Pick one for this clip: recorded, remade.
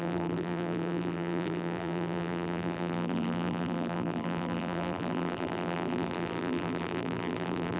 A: remade